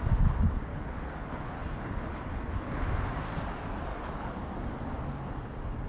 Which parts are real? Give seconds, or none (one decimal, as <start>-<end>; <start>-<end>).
0.0-0.7; 2.8-3.9; 4.4-5.9